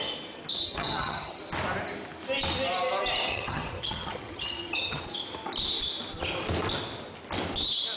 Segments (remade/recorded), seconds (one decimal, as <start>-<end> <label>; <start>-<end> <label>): 0.0-0.6 recorded; 0.6-1.4 remade; 1.4-3.3 recorded; 3.3-5.0 remade; 5.0-8.0 recorded